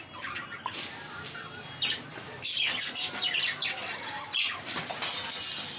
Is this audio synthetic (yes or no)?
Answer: no